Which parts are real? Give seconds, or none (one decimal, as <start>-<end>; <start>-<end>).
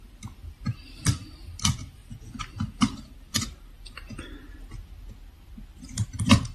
2.0-5.9